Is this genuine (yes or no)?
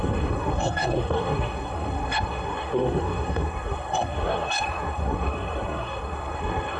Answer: no